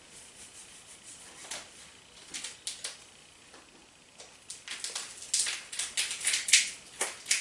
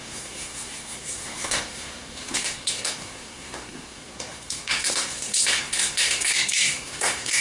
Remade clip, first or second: second